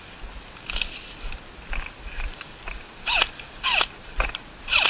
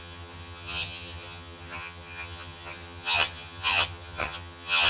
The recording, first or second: first